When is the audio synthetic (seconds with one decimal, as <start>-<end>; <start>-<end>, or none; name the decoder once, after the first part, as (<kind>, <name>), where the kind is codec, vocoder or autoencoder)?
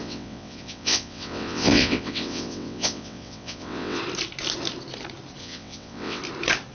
0.0-4.0 (vocoder, WaveNeXt); 5.4-6.2